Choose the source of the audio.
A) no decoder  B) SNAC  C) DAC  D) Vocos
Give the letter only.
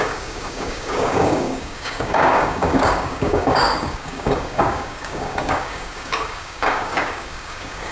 C